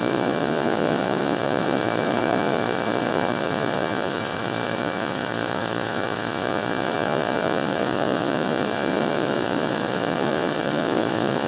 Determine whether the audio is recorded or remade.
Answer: remade